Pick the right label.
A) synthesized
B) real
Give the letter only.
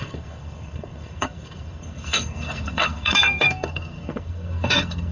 A